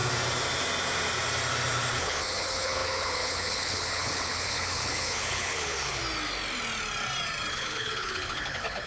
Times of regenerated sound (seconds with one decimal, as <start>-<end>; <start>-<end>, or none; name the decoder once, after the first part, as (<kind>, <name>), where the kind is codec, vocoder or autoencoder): 2.0-6.0 (codec, HILCodec); 7.5-8.9